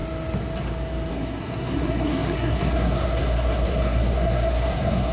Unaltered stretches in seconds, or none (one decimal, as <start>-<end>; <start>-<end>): 0.0-1.1